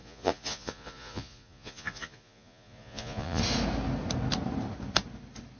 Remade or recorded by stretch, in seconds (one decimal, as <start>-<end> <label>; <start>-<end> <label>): 0.0-3.4 remade; 3.4-5.6 recorded